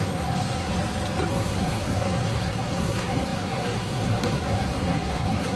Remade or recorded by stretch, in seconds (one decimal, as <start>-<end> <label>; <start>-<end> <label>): 0.0-0.7 remade; 0.7-1.3 recorded; 1.3-5.6 remade